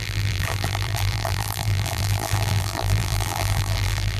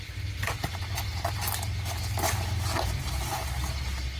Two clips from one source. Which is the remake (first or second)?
first